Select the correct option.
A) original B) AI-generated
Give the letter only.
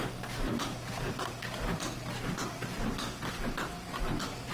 A